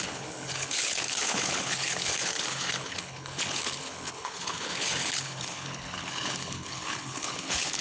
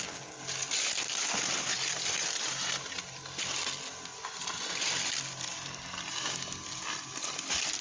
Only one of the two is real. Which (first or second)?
second